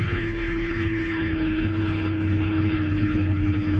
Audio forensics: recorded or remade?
remade